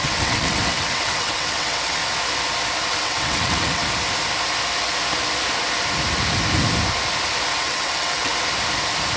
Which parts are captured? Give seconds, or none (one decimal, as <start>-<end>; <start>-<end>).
2.0-2.9; 3.8-7.6; 8.3-9.2